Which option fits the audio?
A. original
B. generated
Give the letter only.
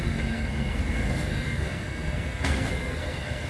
B